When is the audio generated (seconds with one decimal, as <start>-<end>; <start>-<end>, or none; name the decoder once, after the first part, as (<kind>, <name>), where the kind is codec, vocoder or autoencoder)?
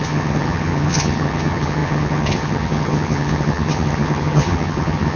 0.0-5.2 (vocoder, HiFi-GAN)